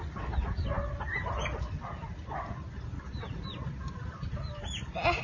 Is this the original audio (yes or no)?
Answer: yes